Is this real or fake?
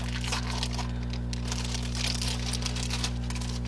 real